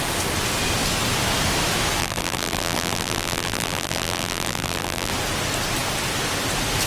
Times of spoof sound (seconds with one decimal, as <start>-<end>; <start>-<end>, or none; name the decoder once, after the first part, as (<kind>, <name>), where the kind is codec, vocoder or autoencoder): 2.0-5.1 (vocoder, BigVGAN v2)